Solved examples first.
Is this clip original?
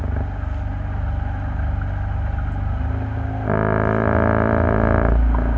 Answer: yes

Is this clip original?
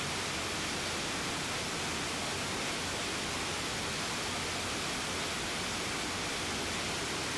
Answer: yes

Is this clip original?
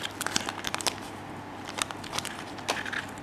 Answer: yes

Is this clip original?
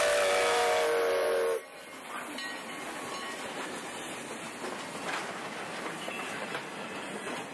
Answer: yes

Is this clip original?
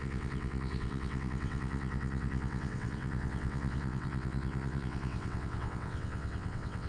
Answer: no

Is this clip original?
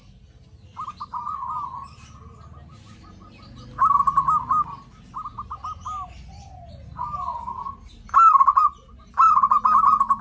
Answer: yes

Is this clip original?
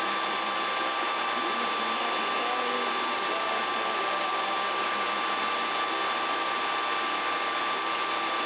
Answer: yes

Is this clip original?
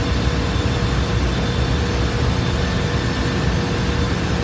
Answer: yes